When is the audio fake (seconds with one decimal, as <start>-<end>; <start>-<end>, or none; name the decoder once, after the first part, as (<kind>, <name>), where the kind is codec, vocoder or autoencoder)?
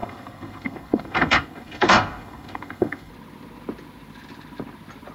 0.0-3.1 (codec, SNAC)